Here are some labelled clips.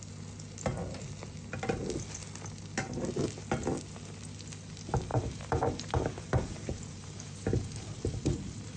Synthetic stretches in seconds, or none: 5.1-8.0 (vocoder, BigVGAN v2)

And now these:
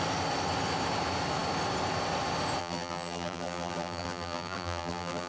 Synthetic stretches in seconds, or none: 2.6-5.3 (vocoder, BigVGAN v2)

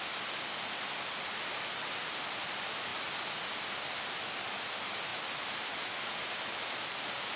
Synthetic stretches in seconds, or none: none

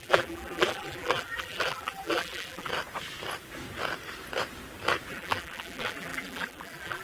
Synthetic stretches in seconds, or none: 0.0-2.7 (vocoder, BigVGAN v2); 5.1-7.0